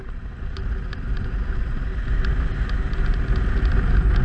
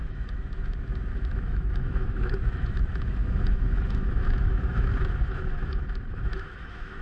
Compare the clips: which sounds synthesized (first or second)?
second